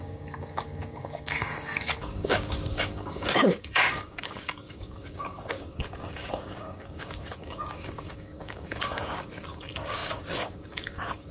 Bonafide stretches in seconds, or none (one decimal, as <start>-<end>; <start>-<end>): none